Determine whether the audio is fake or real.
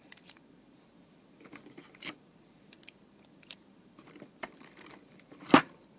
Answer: fake